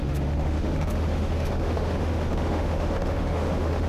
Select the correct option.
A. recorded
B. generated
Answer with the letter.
B